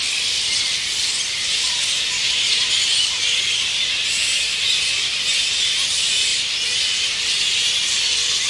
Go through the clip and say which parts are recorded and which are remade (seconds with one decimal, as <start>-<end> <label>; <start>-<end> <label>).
0.0-8.5 recorded